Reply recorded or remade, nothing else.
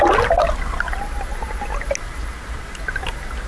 recorded